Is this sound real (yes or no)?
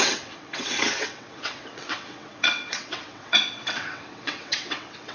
no